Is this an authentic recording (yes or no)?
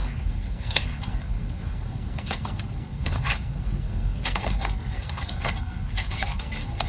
no